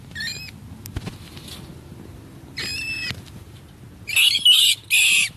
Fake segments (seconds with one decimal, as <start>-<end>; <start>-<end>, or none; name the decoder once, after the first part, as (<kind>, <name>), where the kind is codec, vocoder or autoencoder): none